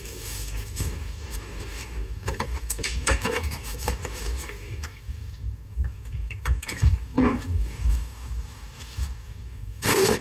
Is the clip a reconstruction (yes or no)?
yes